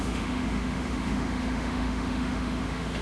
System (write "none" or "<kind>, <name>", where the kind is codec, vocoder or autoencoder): autoencoder, DAC-VAE